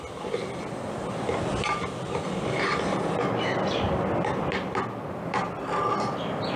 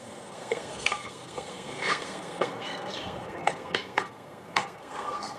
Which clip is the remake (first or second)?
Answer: second